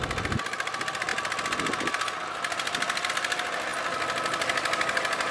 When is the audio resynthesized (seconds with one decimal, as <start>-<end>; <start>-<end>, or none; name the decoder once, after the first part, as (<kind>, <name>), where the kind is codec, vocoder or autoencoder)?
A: none